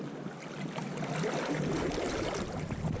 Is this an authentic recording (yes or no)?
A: yes